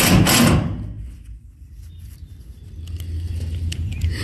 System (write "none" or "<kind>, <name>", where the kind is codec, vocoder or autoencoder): none